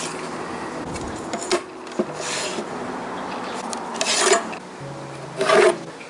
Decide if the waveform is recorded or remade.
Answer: recorded